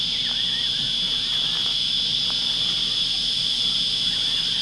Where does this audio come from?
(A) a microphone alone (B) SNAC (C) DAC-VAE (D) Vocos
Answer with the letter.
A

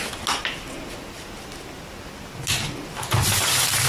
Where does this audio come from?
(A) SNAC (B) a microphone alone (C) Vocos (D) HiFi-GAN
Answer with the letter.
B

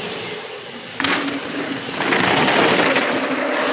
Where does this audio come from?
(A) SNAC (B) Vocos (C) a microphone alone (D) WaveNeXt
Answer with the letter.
C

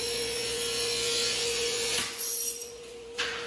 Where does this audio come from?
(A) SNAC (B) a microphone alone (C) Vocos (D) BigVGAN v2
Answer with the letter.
C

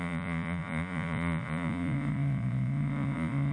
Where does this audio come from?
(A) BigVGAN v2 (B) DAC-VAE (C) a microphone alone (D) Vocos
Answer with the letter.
D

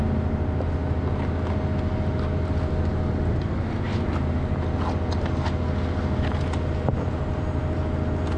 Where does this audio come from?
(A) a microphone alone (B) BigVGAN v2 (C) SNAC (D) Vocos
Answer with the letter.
A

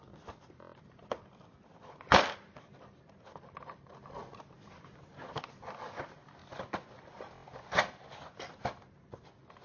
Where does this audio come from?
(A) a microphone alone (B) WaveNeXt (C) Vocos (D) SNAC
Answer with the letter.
A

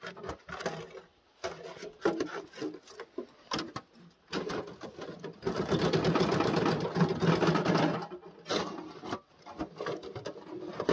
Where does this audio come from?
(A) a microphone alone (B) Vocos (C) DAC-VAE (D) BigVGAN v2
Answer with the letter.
A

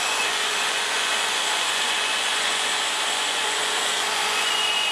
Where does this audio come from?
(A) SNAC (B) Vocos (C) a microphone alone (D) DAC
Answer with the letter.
B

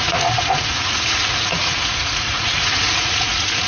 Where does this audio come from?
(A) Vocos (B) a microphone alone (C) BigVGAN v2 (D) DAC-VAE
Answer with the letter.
A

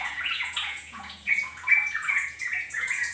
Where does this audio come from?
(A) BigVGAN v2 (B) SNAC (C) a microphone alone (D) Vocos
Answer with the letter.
D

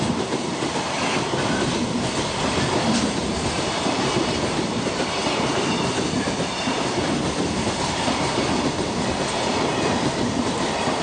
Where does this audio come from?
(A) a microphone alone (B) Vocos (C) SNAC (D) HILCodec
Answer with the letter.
A